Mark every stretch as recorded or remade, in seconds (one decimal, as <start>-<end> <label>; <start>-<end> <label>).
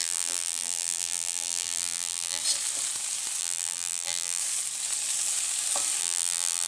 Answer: 0.0-2.4 remade; 2.4-3.4 recorded; 3.4-4.4 remade; 4.4-6.0 recorded; 6.0-6.7 remade